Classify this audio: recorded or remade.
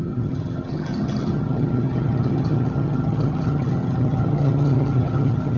remade